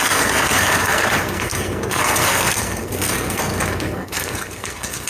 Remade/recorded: remade